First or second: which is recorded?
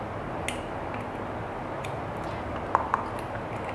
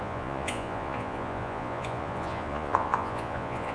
first